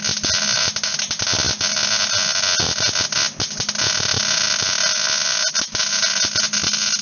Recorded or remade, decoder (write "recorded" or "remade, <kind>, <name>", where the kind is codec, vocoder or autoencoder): recorded